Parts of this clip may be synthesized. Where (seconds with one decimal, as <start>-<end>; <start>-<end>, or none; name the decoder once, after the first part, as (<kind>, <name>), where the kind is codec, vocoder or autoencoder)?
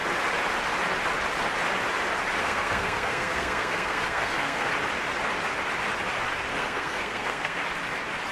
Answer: 2.4-4.7 (codec, SNAC); 6.5-7.6